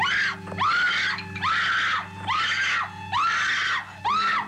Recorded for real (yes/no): yes